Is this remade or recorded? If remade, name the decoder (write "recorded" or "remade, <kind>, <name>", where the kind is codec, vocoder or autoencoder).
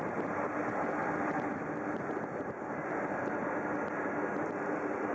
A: recorded